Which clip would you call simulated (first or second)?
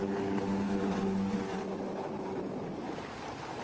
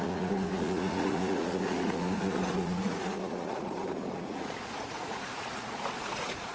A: second